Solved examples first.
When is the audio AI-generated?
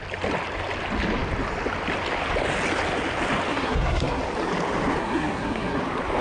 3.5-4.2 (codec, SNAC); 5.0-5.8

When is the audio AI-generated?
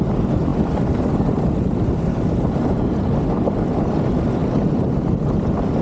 none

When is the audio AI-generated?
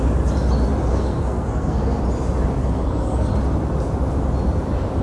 0.9-2.0 (codec, SNAC); 2.6-3.3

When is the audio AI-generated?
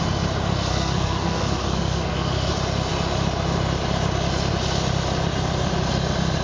0.7-2.5 (codec, SNAC)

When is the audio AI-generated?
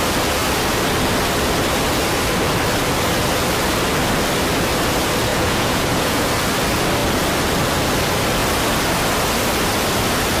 5.3-6.3 (vocoder, Vocos)